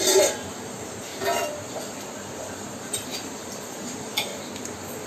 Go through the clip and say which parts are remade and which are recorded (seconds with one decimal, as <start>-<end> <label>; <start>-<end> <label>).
0.0-1.1 remade; 1.1-2.4 recorded; 2.4-4.3 remade; 4.3-5.1 recorded